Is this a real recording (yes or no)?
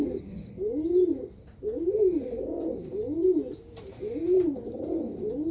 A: yes